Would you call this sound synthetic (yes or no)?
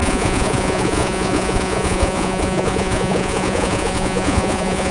yes